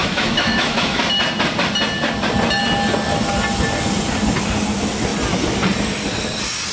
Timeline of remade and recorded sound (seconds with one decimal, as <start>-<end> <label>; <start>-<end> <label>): 0.0-1.0 remade; 1.0-6.7 recorded